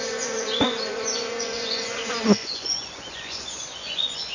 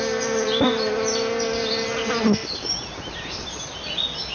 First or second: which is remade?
first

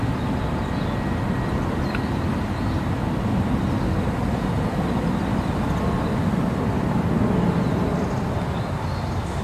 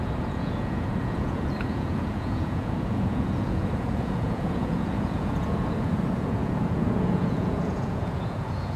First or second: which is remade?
second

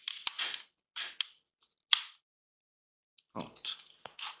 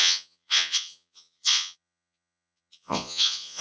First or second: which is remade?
second